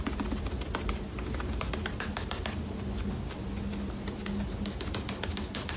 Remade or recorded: recorded